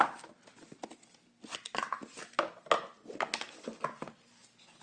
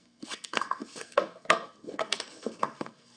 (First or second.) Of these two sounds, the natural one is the first